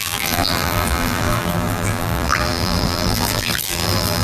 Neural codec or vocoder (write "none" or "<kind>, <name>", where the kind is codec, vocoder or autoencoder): vocoder, BigVGAN v2